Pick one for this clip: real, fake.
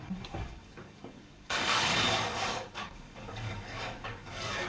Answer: fake